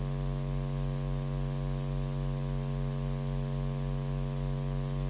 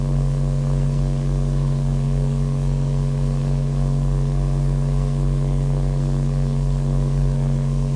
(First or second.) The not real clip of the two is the second